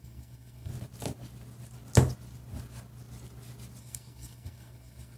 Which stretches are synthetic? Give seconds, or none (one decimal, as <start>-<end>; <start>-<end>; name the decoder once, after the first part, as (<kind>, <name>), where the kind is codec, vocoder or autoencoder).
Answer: 0.0-0.7 (codec, SNAC); 3.8-5.2